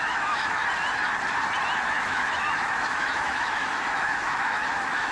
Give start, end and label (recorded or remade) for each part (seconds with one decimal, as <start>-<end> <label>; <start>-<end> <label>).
0.0-0.6 remade; 0.6-1.9 recorded; 1.9-5.1 remade